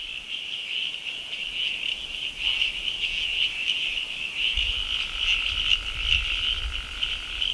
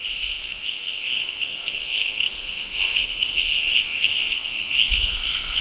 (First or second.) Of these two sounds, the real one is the first